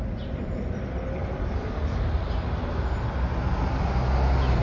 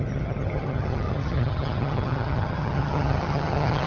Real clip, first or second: first